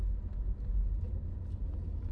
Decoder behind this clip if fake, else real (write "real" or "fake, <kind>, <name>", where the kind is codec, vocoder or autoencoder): real